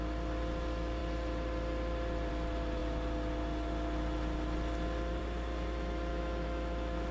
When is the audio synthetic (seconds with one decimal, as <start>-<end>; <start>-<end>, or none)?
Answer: 6.1-7.1